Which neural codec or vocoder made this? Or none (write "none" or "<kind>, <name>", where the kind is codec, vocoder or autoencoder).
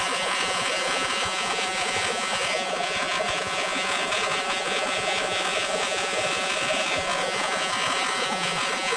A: vocoder, Vocos